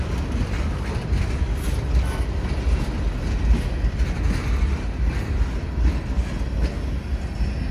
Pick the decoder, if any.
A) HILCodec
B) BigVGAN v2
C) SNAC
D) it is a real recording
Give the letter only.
D